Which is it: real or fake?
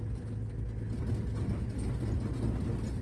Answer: real